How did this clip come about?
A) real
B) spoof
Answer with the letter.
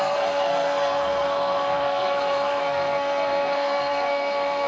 B